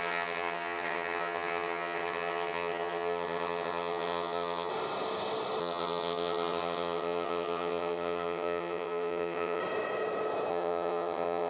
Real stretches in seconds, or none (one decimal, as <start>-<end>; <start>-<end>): 4.7-5.6; 9.6-10.5